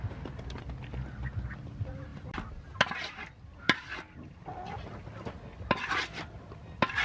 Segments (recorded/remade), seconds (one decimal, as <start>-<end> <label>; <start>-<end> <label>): 0.0-7.0 recorded